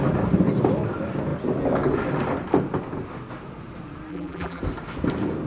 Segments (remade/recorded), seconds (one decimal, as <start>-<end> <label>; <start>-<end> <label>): 0.0-4.1 recorded; 4.1-4.6 remade; 4.6-5.5 recorded